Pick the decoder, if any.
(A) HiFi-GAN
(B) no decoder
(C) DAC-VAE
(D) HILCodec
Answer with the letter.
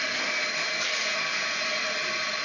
B